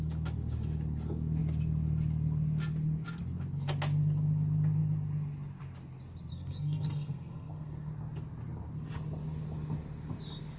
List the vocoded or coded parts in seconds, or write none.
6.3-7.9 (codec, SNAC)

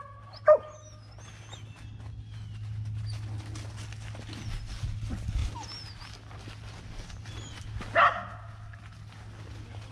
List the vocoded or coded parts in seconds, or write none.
none

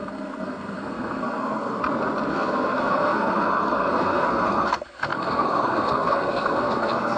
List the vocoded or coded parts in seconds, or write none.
0.0-1.8 (codec, SNAC); 2.3-7.2

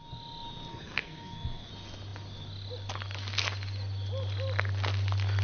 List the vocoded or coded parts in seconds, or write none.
0.7-1.7 (codec, SNAC)

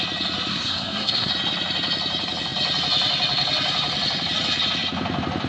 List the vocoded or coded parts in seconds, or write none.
0.5-1.3 (codec, SNAC)